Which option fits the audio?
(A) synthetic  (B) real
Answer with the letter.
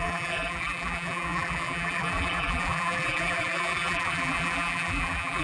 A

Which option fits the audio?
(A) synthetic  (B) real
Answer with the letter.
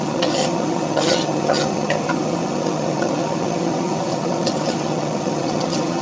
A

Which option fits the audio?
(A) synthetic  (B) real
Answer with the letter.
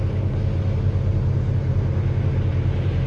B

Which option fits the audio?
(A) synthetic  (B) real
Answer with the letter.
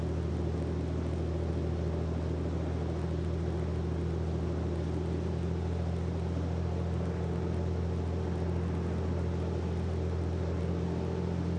B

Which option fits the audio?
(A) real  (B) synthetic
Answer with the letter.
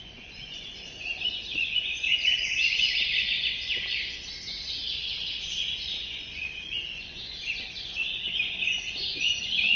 B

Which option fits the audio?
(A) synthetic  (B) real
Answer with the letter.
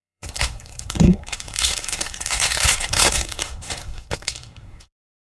A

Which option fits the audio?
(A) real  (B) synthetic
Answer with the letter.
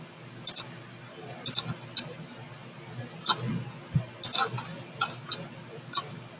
A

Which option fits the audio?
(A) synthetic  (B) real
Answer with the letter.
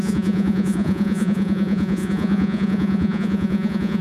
A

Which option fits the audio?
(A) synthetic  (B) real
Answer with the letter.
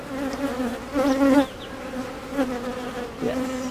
B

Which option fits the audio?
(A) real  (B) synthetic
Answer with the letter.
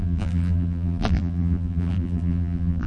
B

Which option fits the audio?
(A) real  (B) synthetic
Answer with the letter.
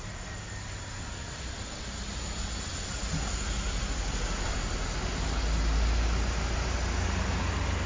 A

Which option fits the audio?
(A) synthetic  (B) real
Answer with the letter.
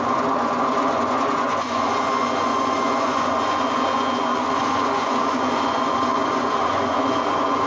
A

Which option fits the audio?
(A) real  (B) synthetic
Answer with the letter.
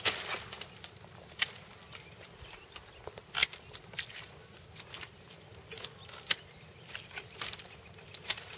B